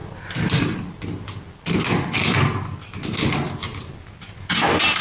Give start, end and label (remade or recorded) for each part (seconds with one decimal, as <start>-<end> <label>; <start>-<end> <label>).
0.0-3.0 remade; 3.0-3.7 recorded; 3.7-5.0 remade